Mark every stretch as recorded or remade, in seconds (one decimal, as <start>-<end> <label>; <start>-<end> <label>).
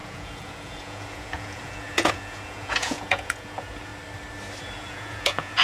0.0-3.9 remade; 3.9-4.6 recorded; 4.6-5.6 remade